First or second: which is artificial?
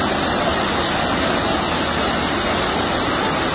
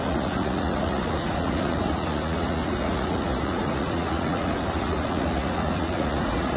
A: second